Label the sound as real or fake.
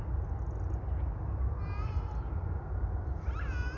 real